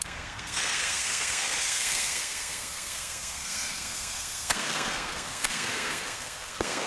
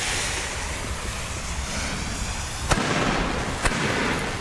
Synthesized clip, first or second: first